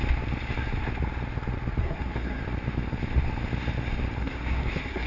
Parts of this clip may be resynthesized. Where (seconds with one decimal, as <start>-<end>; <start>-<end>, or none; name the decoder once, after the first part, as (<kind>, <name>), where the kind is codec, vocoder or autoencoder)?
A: 1.8-2.4 (codec, SNAC); 4.2-5.1